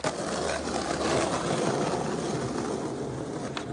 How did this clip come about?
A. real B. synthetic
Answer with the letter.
A